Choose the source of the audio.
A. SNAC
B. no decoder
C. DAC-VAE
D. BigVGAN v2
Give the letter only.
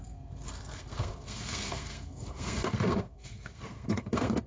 A